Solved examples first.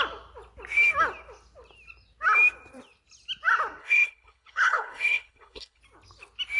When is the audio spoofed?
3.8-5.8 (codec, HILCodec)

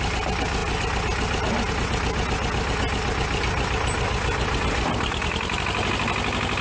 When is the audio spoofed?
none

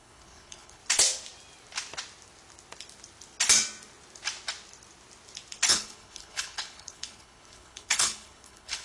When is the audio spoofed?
0.0-0.8 (codec, HILCodec); 5.7-8.8

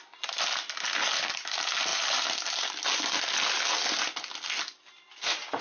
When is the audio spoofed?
none

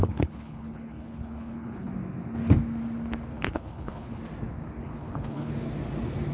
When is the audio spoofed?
0.0-1.9 (codec, HILCodec); 3.3-4.2; 4.8-5.5